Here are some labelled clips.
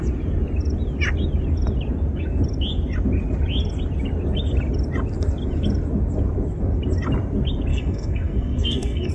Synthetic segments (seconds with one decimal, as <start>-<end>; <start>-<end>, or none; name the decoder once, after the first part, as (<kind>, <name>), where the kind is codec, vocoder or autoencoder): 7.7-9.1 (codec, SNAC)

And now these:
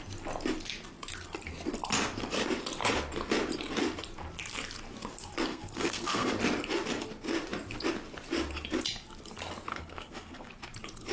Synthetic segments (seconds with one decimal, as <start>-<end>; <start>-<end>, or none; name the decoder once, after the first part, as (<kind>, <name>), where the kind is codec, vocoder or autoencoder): 5.5-6.3 (codec, SNAC); 9.7-10.5

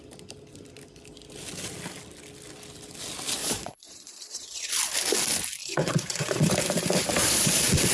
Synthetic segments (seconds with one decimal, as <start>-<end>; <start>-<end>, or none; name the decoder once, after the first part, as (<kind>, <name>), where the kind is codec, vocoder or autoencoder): 3.4-4.7 (vocoder, Vocos); 5.6-6.5; 7.2-7.9

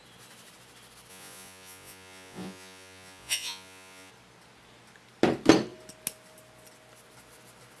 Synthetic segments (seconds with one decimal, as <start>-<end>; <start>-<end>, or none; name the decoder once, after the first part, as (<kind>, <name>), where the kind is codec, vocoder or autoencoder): 1.1-4.1 (vocoder, Vocos)

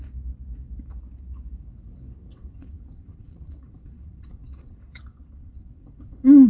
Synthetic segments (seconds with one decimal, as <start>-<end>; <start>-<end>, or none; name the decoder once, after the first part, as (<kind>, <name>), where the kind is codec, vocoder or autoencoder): 2.3-6.5 (vocoder, WaveNeXt)

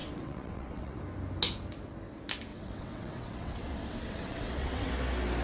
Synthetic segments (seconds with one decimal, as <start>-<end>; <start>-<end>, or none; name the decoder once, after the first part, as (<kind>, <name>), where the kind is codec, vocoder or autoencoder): 0.0-1.0 (vocoder, WaveNeXt); 2.5-4.9